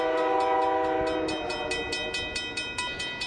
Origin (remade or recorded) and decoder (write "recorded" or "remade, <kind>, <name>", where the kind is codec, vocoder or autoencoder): recorded